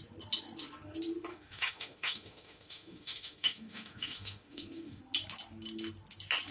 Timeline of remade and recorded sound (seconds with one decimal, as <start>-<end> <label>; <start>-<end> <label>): 0.0-1.3 recorded; 1.3-5.0 remade; 5.0-6.5 recorded